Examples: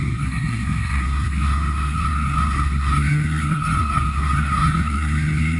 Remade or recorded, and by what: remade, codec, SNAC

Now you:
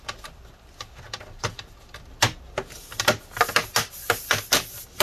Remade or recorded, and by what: recorded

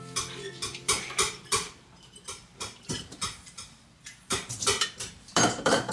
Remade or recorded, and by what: remade, vocoder, BigVGAN v2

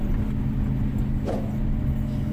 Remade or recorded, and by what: recorded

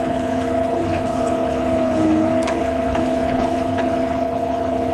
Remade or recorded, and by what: remade, codec, HILCodec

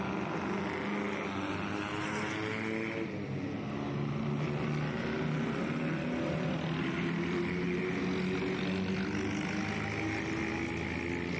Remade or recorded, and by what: recorded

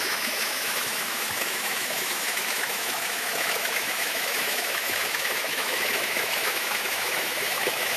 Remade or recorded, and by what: remade, autoencoder, DAC-VAE